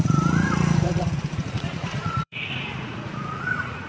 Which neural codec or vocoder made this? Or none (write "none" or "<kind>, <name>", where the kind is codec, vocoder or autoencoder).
vocoder, Vocos